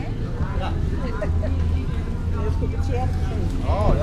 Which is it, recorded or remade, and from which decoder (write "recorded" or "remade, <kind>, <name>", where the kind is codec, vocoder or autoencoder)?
recorded